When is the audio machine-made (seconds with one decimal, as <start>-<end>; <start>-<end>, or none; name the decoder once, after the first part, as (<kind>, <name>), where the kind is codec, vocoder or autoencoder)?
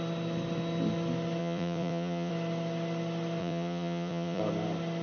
1.4-2.3 (vocoder, Vocos); 3.4-4.4